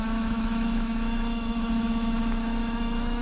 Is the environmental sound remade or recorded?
remade